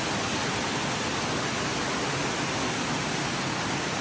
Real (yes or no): yes